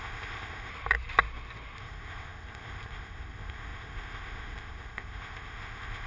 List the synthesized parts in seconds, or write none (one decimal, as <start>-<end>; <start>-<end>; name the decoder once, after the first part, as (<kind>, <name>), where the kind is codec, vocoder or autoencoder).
0.0-0.7 (codec, ZipCodec); 1.8-6.1